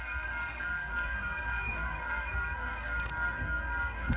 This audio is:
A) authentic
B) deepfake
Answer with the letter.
B